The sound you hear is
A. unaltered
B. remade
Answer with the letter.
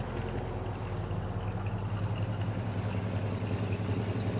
A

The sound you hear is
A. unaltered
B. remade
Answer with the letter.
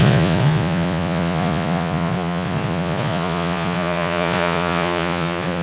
B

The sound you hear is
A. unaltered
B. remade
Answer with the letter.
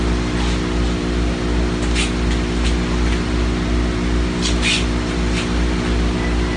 A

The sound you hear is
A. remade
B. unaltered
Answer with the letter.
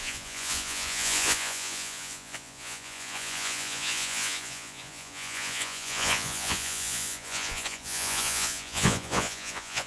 A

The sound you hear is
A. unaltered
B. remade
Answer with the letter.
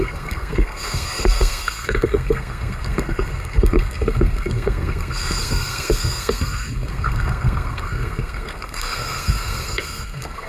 B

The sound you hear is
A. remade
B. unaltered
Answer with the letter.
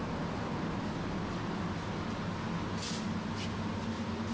B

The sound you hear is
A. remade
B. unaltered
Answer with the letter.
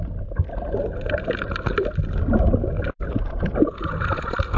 B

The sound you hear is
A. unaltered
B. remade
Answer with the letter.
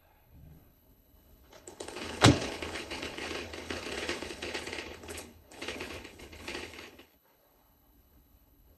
B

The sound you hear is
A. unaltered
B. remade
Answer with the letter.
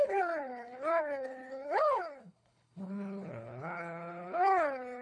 B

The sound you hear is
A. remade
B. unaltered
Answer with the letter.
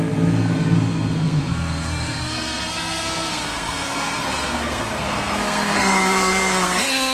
A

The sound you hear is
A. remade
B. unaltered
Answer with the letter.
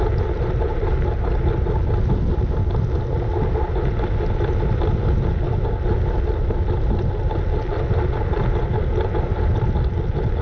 B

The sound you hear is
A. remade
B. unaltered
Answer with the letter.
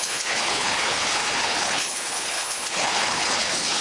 A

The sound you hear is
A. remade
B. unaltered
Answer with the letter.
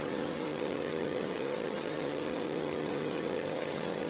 A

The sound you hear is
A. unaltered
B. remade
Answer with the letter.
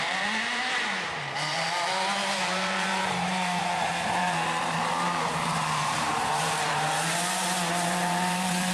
B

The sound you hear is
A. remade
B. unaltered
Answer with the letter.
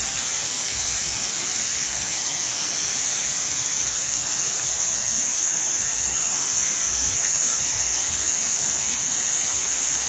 A